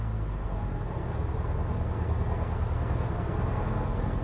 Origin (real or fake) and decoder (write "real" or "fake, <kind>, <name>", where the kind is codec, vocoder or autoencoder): fake, codec, SNAC